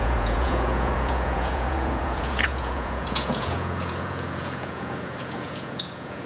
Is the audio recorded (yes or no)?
no